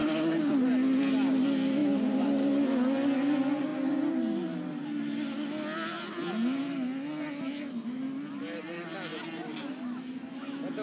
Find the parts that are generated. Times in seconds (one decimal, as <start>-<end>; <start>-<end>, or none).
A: 0.0-0.5